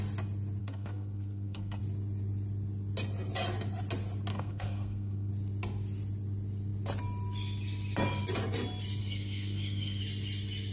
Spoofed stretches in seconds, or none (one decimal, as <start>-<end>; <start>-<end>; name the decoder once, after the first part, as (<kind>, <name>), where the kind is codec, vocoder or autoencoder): 0.6-1.8 (codec, SNAC); 4.3-5.3; 9.0-10.0